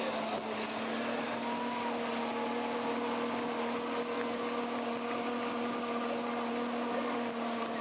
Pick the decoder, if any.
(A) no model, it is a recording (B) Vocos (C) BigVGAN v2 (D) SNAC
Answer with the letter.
A